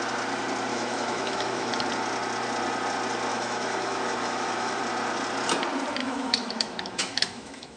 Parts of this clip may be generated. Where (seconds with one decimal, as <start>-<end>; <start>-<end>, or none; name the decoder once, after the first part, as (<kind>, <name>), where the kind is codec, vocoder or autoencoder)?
0.7-1.7 (autoencoder, DAC-VAE); 3.3-4.8; 6.0-7.8